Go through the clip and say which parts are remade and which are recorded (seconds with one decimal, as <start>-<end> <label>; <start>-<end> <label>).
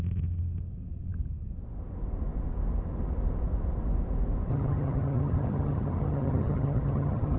0.0-4.5 recorded; 4.5-7.4 remade